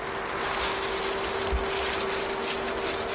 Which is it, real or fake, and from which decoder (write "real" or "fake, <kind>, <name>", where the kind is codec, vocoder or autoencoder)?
real